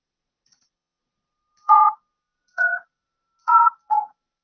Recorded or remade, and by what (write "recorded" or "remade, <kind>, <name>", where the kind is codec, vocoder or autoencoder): remade, vocoder, Vocos